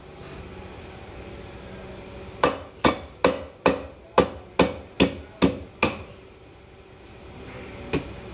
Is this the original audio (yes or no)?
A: yes